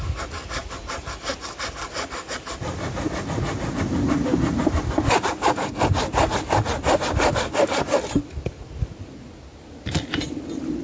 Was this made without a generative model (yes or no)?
yes